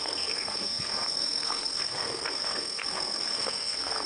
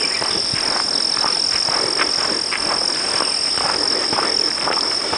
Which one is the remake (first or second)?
first